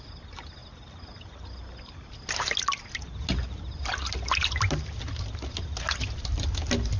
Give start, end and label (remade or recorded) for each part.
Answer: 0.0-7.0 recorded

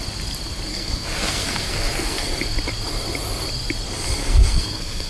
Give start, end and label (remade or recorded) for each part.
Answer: 0.0-0.7 recorded; 0.7-2.3 remade; 2.3-4.2 recorded; 4.2-5.1 remade

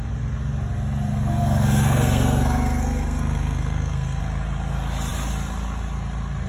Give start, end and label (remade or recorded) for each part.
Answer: 0.0-1.1 recorded; 1.1-4.2 remade; 4.2-6.5 recorded

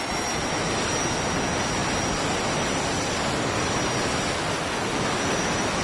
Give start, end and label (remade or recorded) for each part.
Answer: 0.0-5.8 recorded